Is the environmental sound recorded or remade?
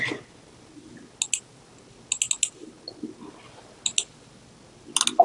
recorded